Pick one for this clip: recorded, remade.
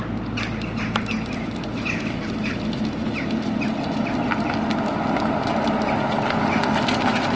recorded